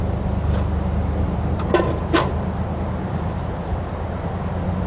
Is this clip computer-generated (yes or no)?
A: no